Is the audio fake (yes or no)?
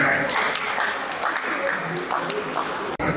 no